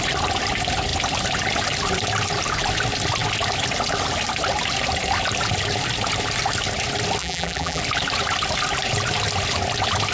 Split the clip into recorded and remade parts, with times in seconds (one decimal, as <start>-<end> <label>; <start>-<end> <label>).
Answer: 0.0-7.2 recorded; 7.2-7.8 remade; 7.8-10.1 recorded